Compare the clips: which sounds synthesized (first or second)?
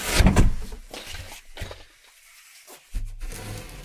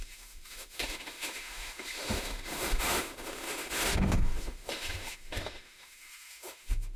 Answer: second